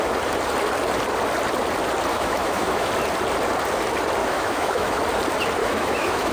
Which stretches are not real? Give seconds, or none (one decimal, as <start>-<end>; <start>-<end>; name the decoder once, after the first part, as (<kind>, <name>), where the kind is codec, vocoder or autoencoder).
2.1-2.9 (autoencoder, DAC-VAE); 4.2-5.0; 5.6-6.3